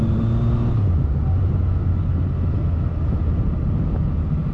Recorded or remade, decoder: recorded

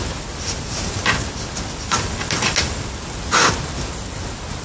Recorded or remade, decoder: recorded